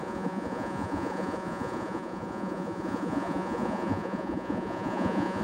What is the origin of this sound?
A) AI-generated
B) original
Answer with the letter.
A